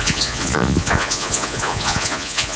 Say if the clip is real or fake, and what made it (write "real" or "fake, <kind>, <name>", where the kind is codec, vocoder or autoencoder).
fake, vocoder, Vocos